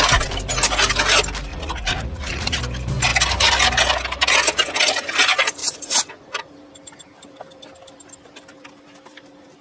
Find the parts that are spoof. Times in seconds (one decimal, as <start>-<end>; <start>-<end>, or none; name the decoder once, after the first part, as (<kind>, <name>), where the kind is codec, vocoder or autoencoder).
1.5-2.6 (vocoder, Vocos); 5.6-6.5